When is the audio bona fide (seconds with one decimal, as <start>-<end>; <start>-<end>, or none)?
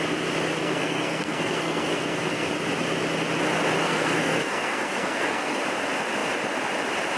0.0-0.6; 2.5-3.8; 5.6-7.2